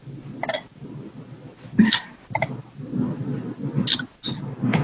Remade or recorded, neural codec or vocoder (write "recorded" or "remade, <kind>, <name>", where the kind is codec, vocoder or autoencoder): recorded